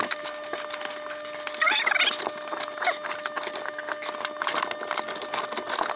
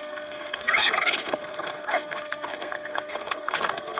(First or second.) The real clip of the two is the first